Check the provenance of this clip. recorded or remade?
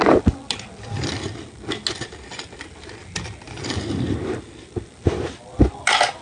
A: recorded